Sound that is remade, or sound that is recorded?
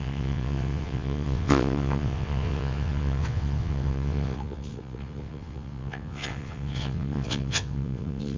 remade